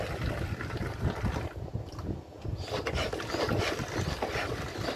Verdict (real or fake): fake